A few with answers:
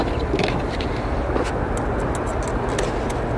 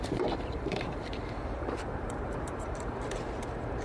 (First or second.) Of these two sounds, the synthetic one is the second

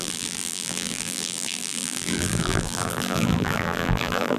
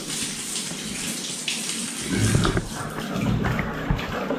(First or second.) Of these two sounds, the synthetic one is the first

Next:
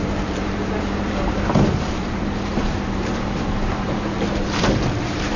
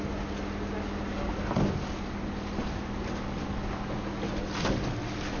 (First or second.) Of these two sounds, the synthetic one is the first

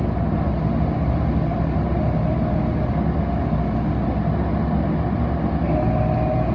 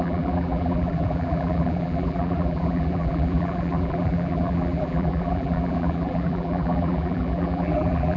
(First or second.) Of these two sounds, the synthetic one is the second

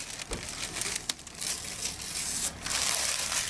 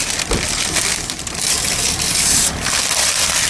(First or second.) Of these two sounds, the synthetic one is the second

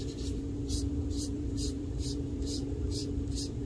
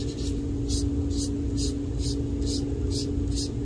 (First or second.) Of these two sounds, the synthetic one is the first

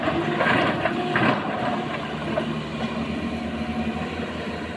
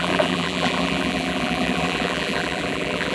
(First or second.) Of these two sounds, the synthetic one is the second